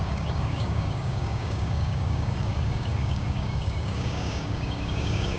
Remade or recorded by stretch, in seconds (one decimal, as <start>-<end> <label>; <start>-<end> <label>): 0.0-5.4 remade